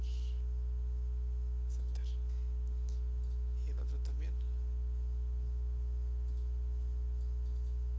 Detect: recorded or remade recorded